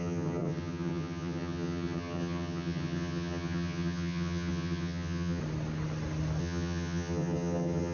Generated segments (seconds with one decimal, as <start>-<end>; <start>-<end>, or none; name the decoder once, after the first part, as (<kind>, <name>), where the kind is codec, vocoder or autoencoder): 0.0-5.4 (vocoder, HiFi-GAN); 6.4-7.9